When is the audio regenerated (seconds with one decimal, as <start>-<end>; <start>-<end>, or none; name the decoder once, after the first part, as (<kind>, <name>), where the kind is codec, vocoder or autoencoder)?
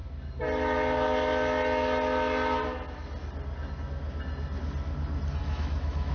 5.4-6.1 (autoencoder, DAC-VAE)